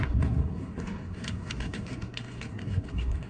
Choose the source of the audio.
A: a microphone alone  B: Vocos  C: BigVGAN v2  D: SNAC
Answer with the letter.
D